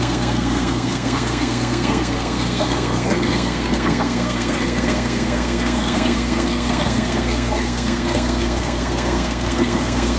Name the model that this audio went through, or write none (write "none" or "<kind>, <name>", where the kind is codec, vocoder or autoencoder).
codec, SNAC